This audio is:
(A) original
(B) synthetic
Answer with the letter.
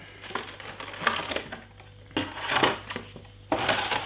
A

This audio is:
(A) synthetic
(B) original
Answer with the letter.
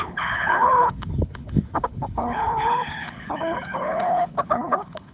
A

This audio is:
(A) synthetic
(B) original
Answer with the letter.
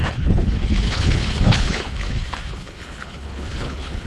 A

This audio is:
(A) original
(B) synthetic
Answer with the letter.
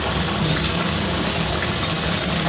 A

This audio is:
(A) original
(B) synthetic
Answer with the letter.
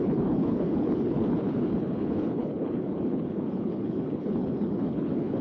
B